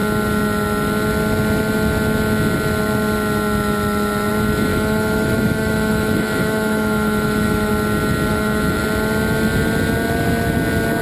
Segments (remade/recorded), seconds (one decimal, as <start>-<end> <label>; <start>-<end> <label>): 0.0-4.7 recorded; 4.7-7.7 remade; 7.7-8.3 recorded; 8.3-8.8 remade; 8.8-11.0 recorded

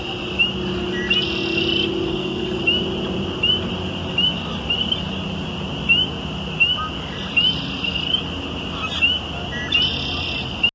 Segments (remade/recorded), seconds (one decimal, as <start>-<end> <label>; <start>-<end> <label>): 0.0-2.1 recorded; 2.1-2.6 remade; 2.6-10.7 recorded

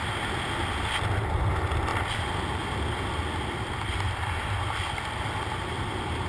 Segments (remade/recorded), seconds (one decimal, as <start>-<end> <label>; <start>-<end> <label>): 0.0-6.3 recorded

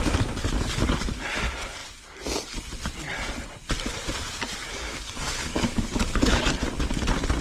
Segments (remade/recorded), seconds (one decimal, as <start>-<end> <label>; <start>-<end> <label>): 0.0-4.7 recorded; 4.7-6.4 remade; 6.4-7.4 recorded

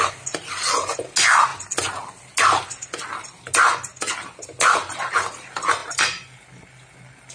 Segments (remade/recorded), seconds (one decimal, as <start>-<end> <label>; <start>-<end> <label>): 0.0-7.3 recorded